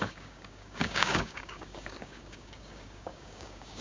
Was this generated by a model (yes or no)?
yes